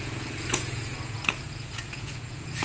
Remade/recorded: remade